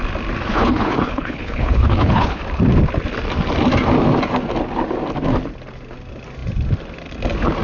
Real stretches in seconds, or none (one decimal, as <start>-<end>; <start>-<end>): 0.0-0.5; 2.4-7.6